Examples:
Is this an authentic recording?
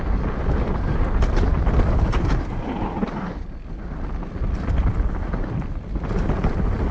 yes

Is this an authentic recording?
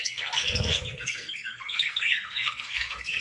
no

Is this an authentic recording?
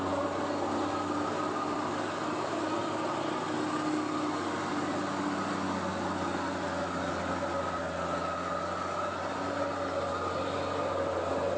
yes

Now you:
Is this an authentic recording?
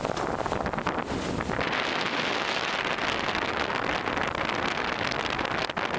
yes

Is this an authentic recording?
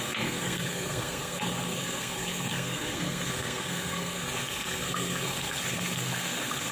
no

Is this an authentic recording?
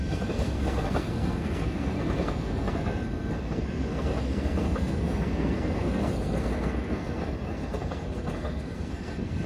no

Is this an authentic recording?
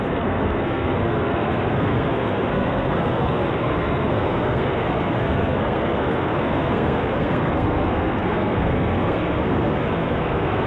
no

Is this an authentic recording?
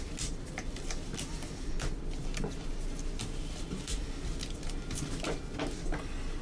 yes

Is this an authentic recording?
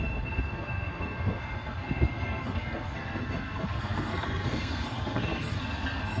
no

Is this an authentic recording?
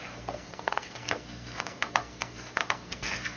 no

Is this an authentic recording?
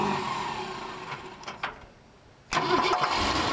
yes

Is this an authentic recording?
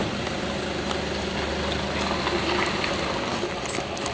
yes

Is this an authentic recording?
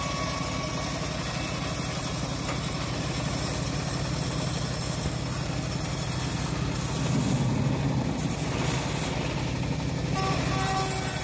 yes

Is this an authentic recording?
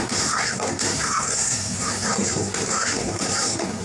no